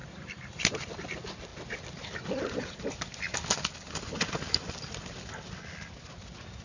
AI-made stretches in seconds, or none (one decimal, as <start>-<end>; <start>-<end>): 0.0-0.8